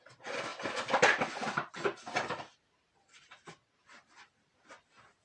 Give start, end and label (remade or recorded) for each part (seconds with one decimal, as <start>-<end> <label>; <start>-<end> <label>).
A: 0.0-5.2 recorded